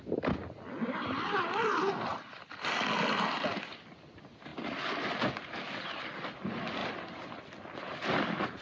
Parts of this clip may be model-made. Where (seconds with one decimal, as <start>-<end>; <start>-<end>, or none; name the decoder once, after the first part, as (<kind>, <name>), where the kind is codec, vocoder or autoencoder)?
2.1-3.3 (vocoder, BigVGAN v2); 6.8-8.2